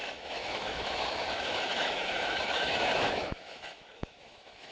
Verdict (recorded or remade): remade